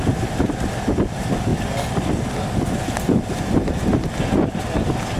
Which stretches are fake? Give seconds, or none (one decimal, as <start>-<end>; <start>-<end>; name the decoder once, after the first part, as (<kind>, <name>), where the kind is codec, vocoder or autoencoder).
none